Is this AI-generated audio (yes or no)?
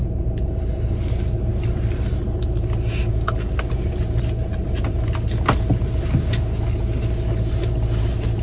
no